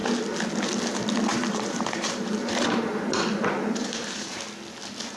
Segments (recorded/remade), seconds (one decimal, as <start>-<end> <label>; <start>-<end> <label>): 0.0-1.3 recorded; 1.3-4.4 remade; 4.4-5.2 recorded